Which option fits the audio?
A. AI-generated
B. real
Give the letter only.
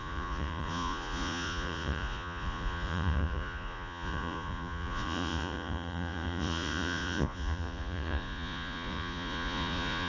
A